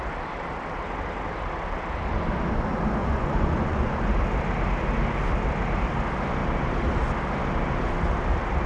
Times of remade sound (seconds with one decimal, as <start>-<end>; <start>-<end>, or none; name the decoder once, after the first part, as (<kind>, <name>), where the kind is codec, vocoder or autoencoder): 3.0-4.0 (vocoder, Vocos)